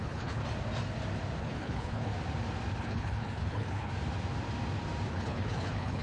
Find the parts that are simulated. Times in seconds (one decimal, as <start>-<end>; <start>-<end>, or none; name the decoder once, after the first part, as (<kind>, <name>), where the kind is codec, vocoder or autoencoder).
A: 0.0-0.4 (codec, HILCodec); 1.4-2.1; 2.8-3.9; 5.1-6.0